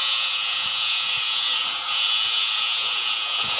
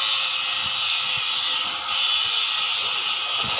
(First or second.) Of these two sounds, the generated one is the first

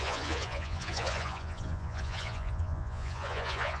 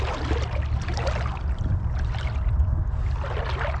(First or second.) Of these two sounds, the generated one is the first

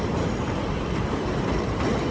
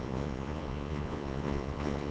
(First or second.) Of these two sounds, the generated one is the second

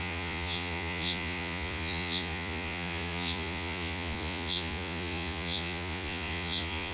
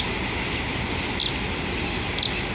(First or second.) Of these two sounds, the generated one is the first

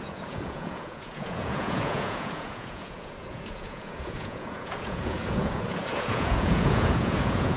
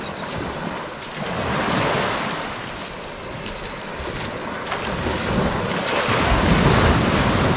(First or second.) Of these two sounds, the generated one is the first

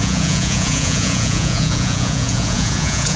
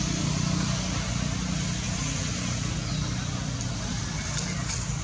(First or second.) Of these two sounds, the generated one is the first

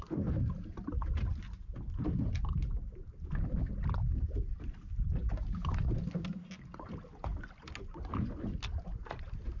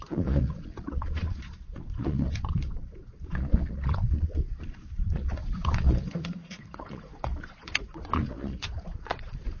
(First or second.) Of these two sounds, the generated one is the second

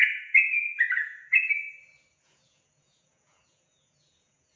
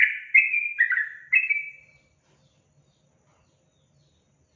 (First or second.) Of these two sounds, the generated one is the first